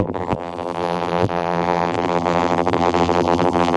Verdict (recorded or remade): remade